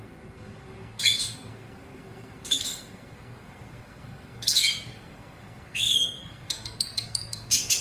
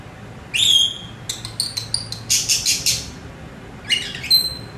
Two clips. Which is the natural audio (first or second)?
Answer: second